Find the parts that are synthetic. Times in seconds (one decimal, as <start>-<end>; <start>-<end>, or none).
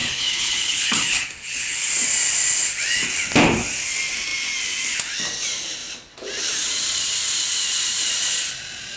0.0-1.9